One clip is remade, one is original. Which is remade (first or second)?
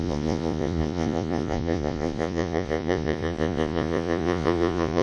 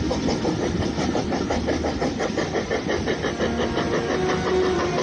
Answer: first